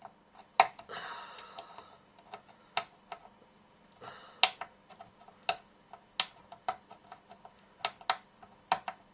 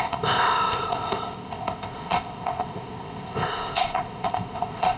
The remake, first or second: second